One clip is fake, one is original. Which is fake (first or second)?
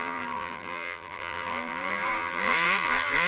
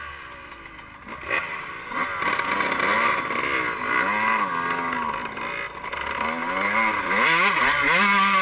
first